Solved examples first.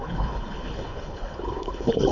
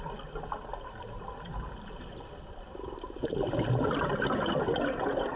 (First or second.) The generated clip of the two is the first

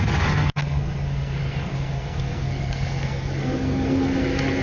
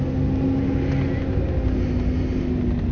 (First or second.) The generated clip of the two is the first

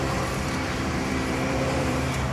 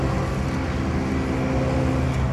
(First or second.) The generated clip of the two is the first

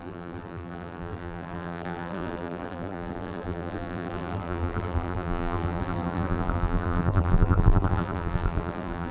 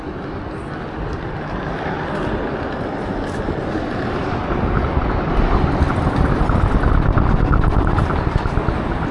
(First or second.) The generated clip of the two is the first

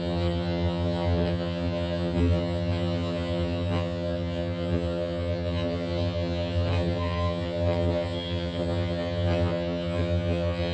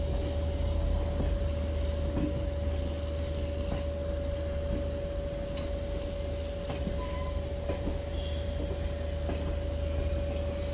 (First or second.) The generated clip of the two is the first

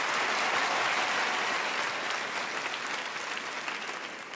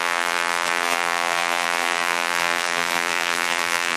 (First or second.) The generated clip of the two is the second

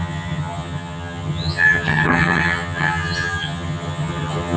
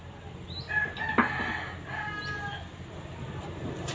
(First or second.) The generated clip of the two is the first